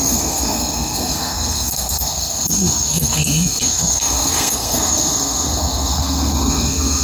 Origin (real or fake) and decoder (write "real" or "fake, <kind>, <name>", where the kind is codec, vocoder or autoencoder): fake, codec, SNAC